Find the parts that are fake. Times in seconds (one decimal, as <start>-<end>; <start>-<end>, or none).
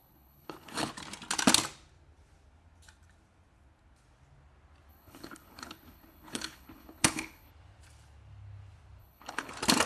0.0-0.9; 4.9-7.5; 9.0-9.5